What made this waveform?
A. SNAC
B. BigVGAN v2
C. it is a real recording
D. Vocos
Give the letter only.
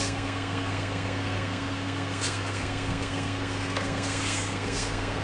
A